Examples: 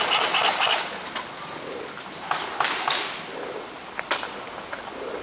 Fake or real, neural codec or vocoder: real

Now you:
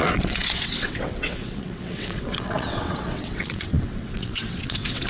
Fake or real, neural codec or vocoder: fake, vocoder, WaveNeXt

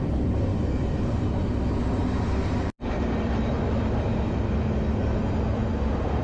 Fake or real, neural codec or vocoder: real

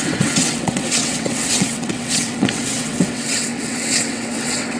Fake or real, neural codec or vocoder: fake, vocoder, WaveNeXt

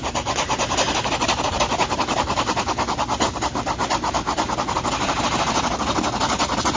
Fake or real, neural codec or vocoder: real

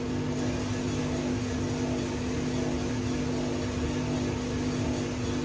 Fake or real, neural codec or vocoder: real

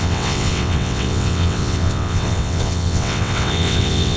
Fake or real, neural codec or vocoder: fake, vocoder, WaveNeXt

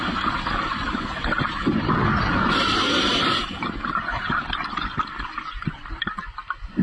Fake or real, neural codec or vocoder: real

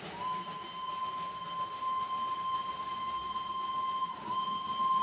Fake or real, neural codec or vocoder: real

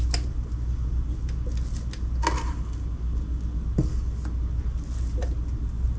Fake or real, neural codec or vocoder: real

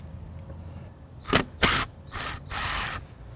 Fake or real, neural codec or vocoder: real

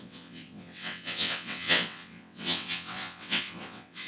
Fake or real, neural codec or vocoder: fake, vocoder, WaveNeXt